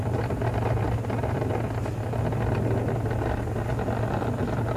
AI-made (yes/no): no